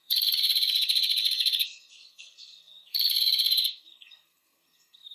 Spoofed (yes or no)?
yes